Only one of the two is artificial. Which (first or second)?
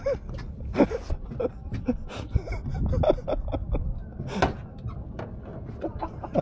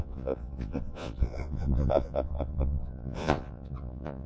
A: second